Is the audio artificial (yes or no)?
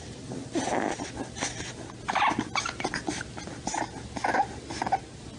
no